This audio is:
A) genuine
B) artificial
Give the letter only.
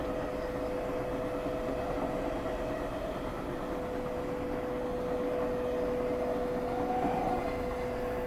A